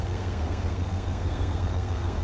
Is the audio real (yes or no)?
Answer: no